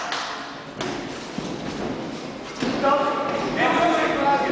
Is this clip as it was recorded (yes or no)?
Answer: yes